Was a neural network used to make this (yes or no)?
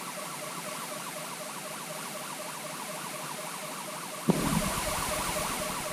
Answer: no